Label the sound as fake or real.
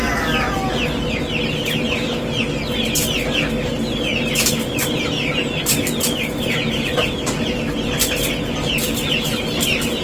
real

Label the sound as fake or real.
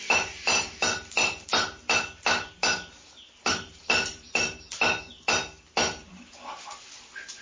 fake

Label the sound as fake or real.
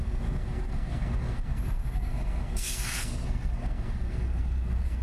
fake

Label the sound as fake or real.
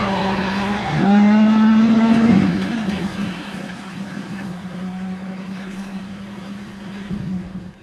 fake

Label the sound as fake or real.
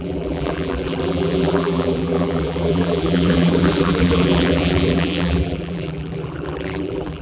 fake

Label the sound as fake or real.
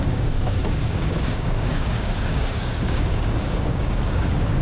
fake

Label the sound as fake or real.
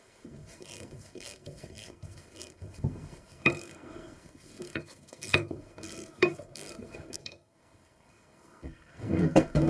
fake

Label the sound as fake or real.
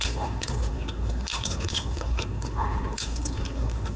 fake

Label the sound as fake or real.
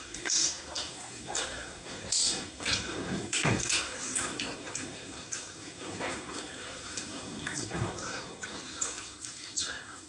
fake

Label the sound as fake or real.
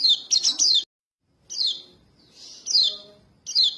real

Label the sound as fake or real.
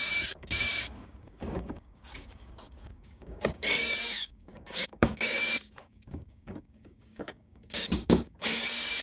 fake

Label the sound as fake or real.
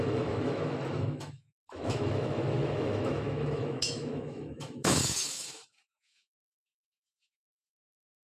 fake